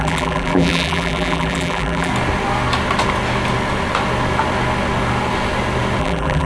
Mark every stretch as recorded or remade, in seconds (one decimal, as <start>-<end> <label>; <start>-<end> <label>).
0.0-2.1 remade; 2.1-6.0 recorded; 6.0-6.5 remade